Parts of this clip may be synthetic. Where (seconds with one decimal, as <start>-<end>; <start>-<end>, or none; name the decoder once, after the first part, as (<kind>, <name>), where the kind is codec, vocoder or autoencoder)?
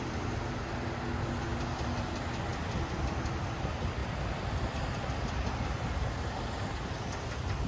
none